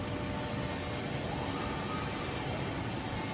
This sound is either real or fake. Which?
real